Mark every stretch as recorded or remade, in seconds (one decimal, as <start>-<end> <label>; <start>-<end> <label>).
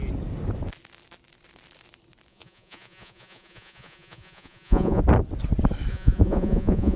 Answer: 0.0-2.3 recorded; 2.3-5.0 remade; 5.0-5.9 recorded; 5.9-7.0 remade